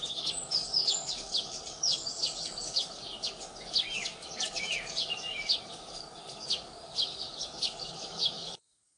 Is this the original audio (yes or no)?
no